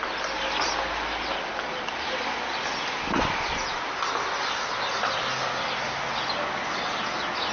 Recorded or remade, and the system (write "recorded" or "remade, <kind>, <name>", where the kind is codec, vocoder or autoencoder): recorded